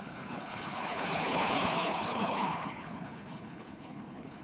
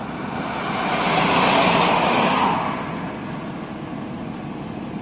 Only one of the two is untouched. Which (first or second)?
second